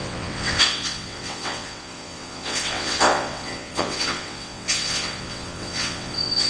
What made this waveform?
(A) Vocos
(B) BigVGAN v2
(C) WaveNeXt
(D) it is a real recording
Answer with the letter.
C